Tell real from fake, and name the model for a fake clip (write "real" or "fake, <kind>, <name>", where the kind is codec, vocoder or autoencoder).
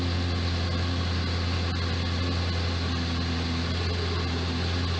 real